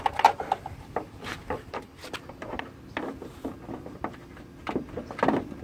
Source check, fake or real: real